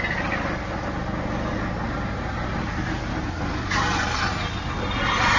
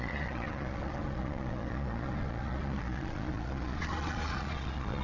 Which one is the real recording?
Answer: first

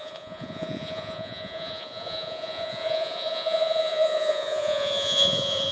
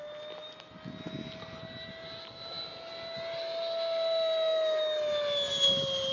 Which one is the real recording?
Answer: second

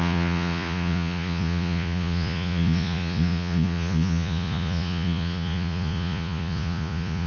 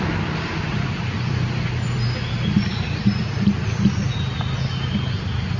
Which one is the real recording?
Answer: second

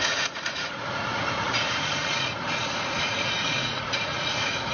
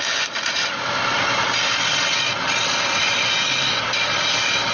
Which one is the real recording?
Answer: second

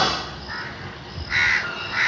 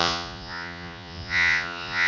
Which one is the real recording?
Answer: first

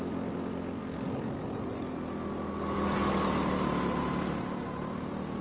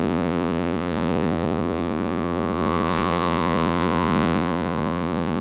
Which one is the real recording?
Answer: first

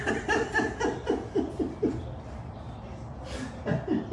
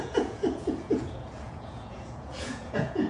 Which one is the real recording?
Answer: first